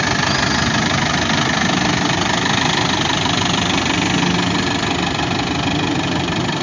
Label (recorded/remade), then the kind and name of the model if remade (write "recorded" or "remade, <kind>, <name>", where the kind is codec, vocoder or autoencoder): recorded